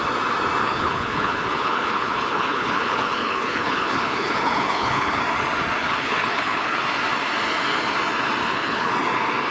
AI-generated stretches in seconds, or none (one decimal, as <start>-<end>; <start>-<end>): 0.6-5.2; 5.8-6.8; 8.4-8.9